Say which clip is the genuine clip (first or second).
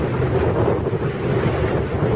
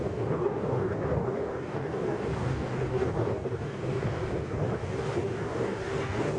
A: first